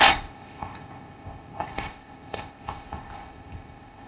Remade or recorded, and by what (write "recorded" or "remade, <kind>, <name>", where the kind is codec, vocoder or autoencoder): remade, codec, ZipCodec